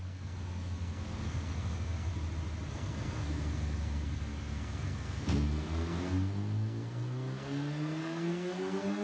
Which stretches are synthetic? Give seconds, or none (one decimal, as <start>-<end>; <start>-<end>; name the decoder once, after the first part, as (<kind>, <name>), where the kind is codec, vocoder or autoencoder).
0.0-2.1 (codec, SNAC); 2.7-9.0